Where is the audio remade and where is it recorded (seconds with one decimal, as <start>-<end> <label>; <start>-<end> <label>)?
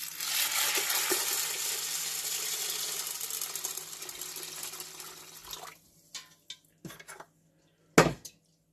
0.0-8.7 recorded